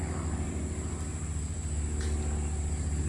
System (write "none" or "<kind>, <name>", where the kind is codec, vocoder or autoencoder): none